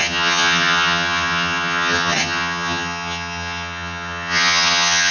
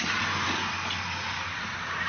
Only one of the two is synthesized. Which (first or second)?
first